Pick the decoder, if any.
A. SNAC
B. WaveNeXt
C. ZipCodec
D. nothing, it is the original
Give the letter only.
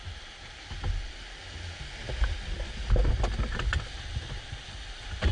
D